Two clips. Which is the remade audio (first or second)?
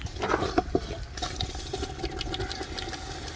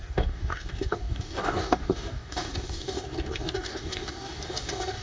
second